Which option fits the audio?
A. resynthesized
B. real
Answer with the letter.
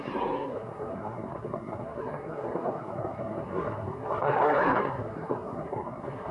A